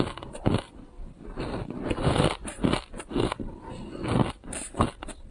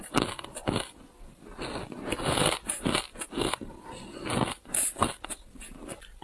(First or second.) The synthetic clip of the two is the first